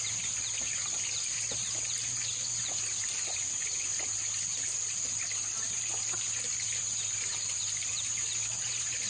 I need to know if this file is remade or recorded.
recorded